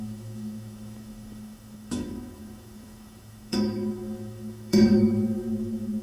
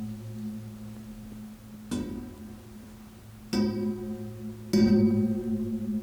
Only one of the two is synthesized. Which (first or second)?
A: first